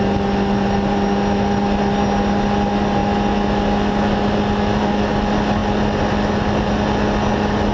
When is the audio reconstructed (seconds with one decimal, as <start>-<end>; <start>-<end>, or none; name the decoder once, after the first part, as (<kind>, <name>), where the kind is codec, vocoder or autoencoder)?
none